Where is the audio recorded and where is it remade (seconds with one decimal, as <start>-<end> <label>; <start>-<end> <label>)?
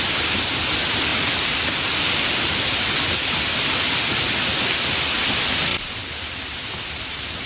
0.0-7.5 recorded